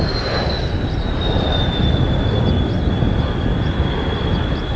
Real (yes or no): no